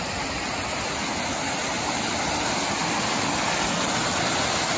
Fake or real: real